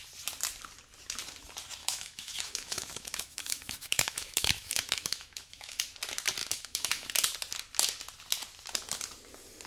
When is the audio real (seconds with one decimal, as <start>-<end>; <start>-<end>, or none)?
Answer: 0.0-1.8; 5.8-6.4; 7.1-9.7